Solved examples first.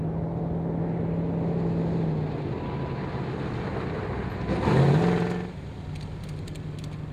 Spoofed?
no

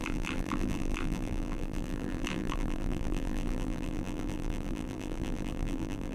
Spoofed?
yes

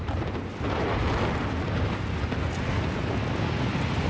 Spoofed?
no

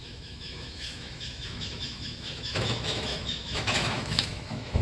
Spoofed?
yes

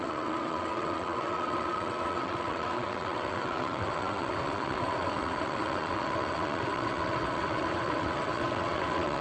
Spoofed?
yes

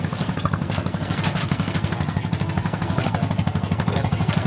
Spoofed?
yes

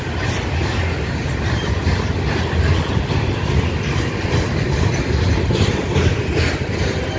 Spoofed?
no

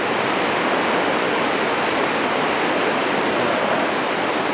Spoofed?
no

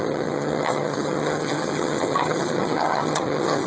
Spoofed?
yes